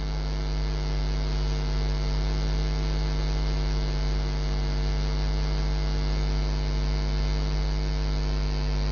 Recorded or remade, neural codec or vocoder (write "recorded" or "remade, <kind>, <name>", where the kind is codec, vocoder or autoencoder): recorded